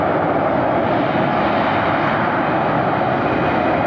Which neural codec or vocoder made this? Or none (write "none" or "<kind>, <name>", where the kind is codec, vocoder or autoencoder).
none